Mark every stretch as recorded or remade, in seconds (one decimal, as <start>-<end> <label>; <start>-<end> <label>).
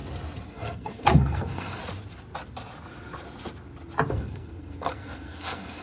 0.0-0.5 recorded; 0.5-1.8 remade; 1.8-4.1 recorded; 4.1-5.8 remade